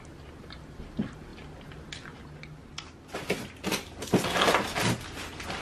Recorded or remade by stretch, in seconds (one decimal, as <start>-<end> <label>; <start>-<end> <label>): 0.0-5.6 recorded